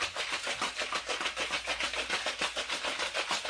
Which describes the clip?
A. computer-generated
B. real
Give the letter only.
B